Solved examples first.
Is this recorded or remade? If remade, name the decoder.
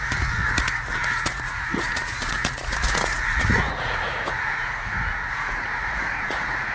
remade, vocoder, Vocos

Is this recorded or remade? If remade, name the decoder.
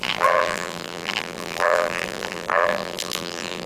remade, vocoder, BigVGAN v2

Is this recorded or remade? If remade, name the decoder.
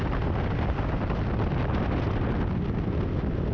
recorded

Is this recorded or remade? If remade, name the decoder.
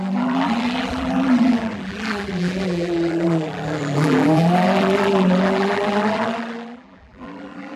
remade, vocoder, BigVGAN v2